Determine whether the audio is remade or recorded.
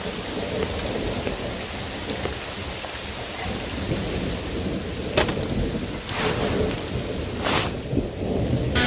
recorded